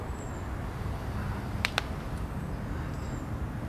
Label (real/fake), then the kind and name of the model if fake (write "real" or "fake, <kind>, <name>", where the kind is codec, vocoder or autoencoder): real